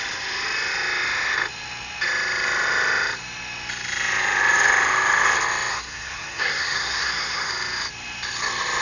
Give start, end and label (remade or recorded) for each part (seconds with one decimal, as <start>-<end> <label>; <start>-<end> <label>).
0.0-5.7 recorded; 5.7-7.5 remade; 7.5-8.8 recorded